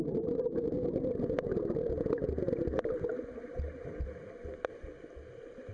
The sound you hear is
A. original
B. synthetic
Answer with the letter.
A